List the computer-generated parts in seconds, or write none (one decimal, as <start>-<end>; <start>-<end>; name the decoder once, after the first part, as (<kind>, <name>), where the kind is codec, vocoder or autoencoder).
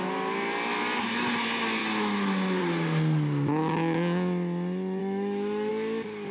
1.8-2.6 (autoencoder, DAC-VAE); 5.0-5.7